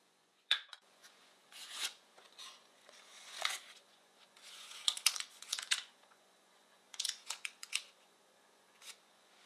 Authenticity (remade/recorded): remade